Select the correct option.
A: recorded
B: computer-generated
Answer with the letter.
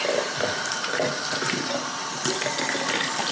A